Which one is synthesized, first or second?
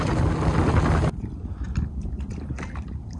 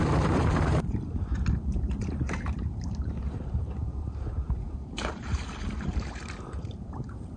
second